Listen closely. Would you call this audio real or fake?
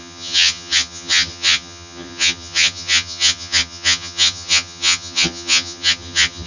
fake